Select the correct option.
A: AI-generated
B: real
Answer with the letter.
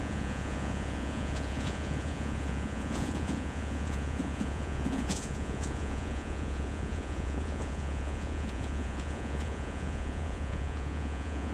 A